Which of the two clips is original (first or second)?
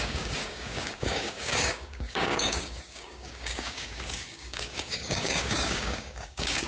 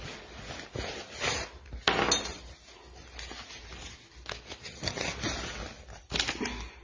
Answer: second